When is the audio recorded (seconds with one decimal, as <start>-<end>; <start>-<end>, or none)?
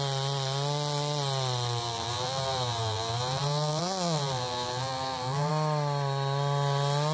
0.0-1.8; 5.5-7.1